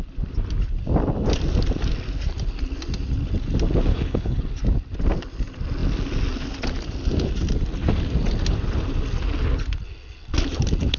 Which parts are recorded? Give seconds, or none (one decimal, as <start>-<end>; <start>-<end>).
0.0-3.9; 4.4-11.0